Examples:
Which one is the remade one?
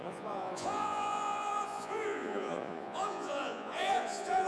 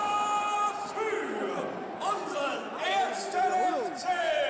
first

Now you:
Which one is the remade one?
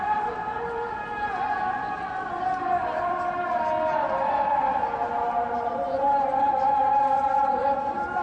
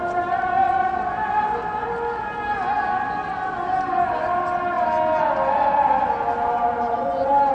first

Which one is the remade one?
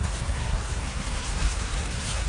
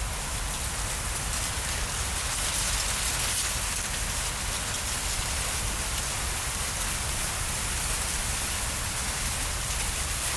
first